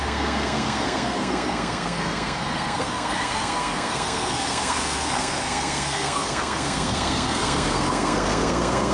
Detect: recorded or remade remade